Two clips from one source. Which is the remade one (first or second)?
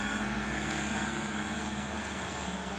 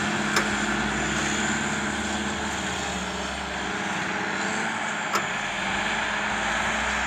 first